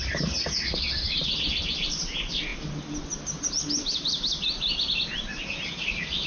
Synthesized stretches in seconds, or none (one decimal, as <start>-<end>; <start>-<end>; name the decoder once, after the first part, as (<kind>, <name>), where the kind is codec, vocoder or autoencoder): none